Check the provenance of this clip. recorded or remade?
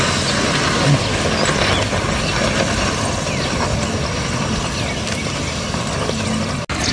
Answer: recorded